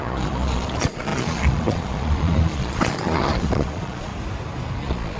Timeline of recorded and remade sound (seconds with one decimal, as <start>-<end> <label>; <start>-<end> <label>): 0.0-4.1 remade; 4.1-4.8 recorded; 4.8-5.2 remade

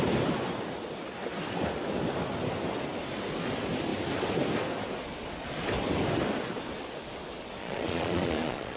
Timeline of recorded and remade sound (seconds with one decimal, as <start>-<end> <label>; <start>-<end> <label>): 0.0-7.6 recorded; 7.6-8.8 remade

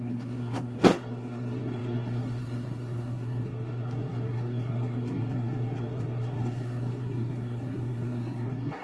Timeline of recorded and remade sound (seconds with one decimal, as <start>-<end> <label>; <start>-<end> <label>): 0.0-8.8 remade

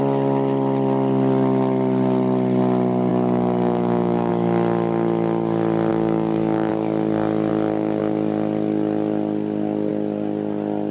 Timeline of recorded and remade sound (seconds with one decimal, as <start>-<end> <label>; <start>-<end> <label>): 0.0-3.1 recorded; 3.1-4.3 remade; 4.3-5.9 recorded; 5.9-6.7 remade; 6.7-10.9 recorded

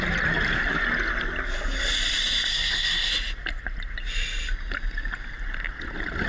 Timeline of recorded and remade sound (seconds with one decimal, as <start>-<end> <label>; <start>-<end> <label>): 0.0-2.5 recorded; 2.5-3.1 remade; 3.1-6.3 recorded

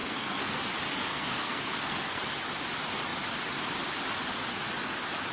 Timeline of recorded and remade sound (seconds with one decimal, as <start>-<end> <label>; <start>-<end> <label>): 0.0-0.6 remade; 0.6-1.1 recorded; 1.1-2.2 remade; 2.2-5.3 recorded

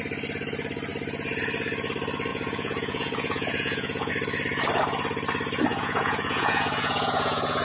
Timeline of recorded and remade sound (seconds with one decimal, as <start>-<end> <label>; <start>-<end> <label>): 0.0-2.3 recorded; 2.3-4.1 remade; 4.1-5.7 recorded; 5.7-7.6 remade